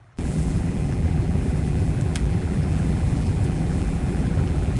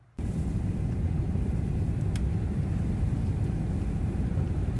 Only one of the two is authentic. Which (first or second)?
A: second